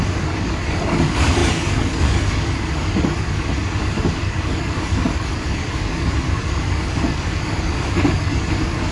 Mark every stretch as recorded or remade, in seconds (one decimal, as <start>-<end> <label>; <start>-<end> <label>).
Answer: 0.0-8.9 remade